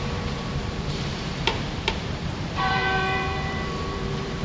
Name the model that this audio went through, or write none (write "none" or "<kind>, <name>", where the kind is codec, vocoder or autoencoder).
vocoder, BigVGAN v2